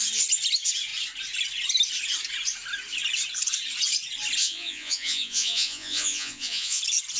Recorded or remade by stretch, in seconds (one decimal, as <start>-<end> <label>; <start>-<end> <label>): 0.0-4.4 recorded; 4.4-6.8 remade; 6.8-7.2 recorded